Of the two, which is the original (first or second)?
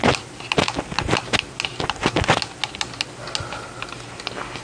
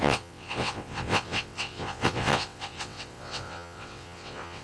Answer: first